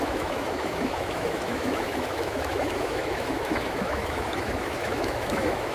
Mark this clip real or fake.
fake